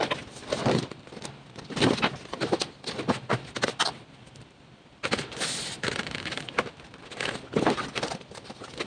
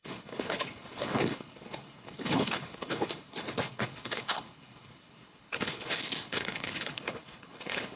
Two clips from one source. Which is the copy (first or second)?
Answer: second